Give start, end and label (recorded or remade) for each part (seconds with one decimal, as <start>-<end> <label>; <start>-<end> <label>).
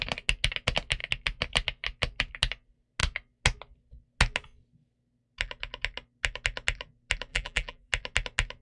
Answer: 0.0-7.3 recorded; 7.3-7.9 remade; 7.9-8.6 recorded